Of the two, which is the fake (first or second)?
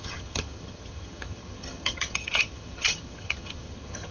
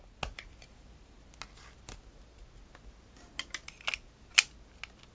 first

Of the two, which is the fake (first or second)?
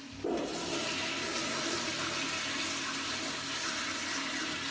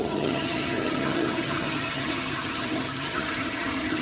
second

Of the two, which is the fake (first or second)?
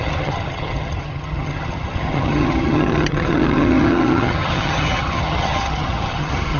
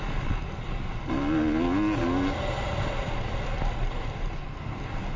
first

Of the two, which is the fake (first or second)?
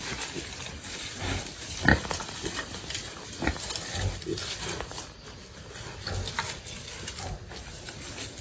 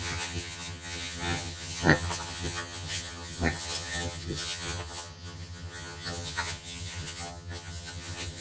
second